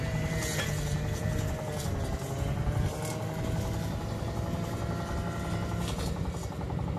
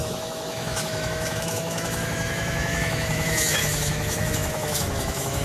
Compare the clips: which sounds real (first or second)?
first